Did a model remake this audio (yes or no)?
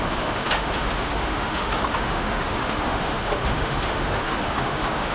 yes